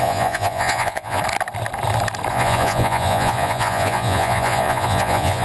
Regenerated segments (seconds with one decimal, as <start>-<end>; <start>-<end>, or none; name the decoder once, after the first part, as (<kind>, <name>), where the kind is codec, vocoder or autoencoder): 0.0-1.2 (vocoder, Vocos); 2.3-5.4